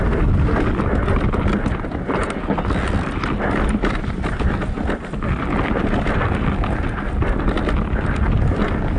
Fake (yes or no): no